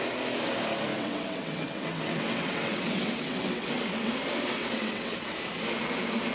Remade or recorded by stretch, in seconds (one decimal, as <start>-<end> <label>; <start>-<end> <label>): 0.0-0.9 recorded; 0.9-4.1 remade; 4.1-4.6 recorded; 4.6-5.3 remade; 5.3-6.3 recorded